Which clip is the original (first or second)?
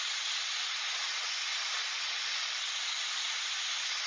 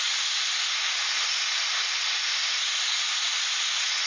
second